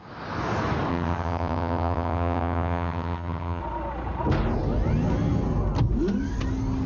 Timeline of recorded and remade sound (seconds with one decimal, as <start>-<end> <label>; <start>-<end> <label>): 0.0-0.9 recorded; 0.9-3.6 remade; 3.6-6.9 recorded